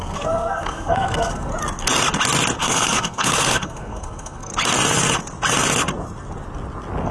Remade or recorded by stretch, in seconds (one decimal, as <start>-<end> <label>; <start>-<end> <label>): 0.0-1.5 remade; 1.5-2.6 recorded; 2.6-4.5 remade; 4.5-7.1 recorded